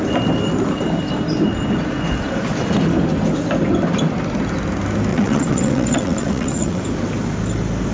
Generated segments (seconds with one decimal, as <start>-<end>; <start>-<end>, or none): 5.1-6.8